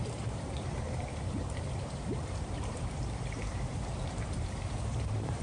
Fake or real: fake